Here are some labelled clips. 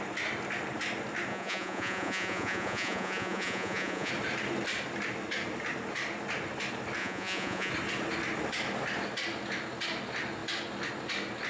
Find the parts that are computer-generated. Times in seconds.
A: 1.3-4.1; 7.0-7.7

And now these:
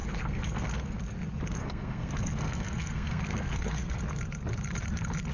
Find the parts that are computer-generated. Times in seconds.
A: 0.0-1.0; 1.6-4.0

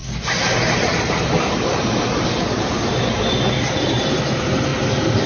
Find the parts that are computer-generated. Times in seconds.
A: 3.2-5.3

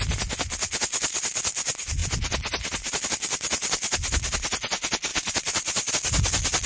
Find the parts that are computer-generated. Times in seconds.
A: 5.1-5.9